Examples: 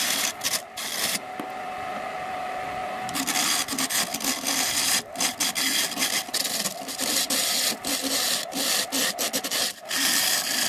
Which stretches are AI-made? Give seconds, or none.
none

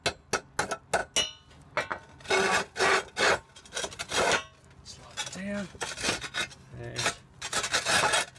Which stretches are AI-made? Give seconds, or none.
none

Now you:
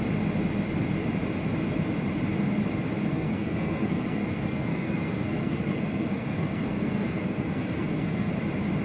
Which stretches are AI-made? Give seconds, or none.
3.1-8.3 (codec, SNAC)

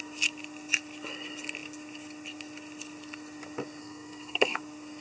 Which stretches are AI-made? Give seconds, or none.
3.8-4.6 (codec, SNAC)

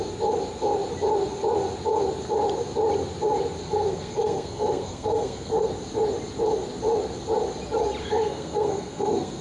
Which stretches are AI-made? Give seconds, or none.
3.6-5.7 (codec, SNAC); 8.0-9.4